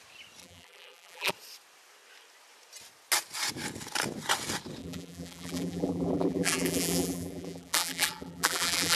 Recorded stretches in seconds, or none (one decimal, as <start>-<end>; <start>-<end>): 0.0-0.4; 1.3-4.8